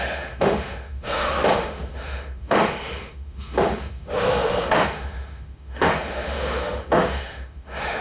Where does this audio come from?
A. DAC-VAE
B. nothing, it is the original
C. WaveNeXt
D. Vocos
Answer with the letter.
A